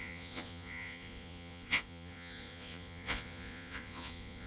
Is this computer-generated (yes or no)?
yes